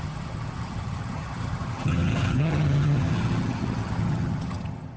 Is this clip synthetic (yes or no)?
yes